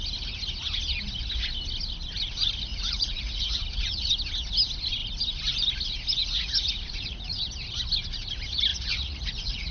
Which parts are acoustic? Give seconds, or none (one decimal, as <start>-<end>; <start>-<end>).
0.0-2.7; 4.1-6.2; 7.4-8.7